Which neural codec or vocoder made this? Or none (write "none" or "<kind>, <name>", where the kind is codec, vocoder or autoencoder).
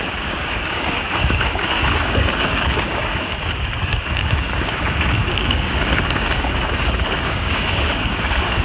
codec, DAC